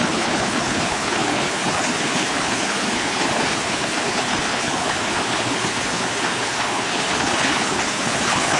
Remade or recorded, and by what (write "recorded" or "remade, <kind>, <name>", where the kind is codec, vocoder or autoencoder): remade, codec, HILCodec